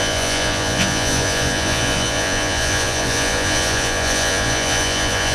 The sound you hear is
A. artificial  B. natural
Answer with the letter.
A